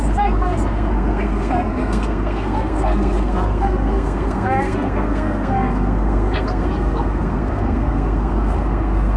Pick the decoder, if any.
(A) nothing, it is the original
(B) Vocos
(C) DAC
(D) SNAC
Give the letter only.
D